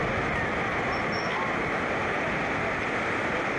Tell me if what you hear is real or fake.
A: real